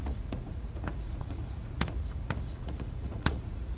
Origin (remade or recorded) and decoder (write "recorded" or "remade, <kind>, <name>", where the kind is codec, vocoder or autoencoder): remade, vocoder, Vocos